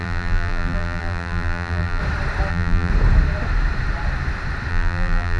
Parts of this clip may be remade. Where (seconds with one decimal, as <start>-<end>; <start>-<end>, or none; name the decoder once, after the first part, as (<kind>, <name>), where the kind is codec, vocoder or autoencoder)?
0.0-2.0 (vocoder, BigVGAN v2); 2.5-2.9; 4.7-5.4

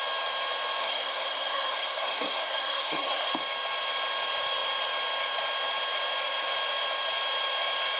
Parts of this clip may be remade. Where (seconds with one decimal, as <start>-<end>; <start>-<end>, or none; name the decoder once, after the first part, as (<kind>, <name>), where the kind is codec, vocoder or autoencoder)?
0.8-3.3 (codec, SNAC)

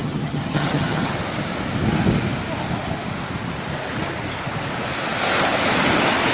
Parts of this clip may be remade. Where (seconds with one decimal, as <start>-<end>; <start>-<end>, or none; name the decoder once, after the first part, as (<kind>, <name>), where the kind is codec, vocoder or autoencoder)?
0.0-1.1 (vocoder, HiFi-GAN)

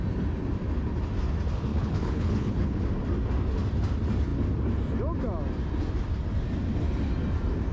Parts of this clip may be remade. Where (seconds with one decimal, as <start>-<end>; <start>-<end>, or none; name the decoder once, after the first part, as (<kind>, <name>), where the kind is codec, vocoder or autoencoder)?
1.7-2.8 (codec, HILCodec)